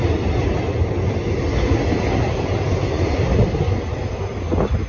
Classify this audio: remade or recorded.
recorded